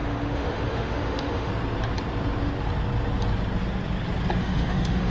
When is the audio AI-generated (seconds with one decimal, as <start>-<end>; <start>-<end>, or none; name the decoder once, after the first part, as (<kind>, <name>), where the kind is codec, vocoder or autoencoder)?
0.0-1.5 (autoencoder, DAC-VAE); 4.4-5.1